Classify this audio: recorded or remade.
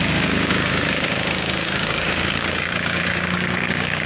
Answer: remade